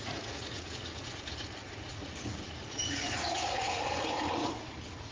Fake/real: fake